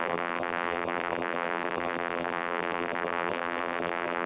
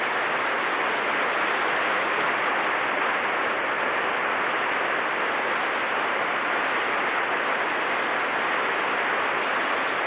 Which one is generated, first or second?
first